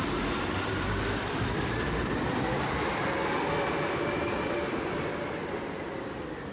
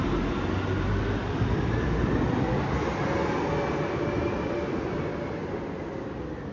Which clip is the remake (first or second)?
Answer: first